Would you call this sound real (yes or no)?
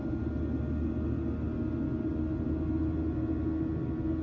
yes